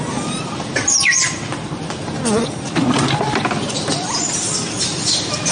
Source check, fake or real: fake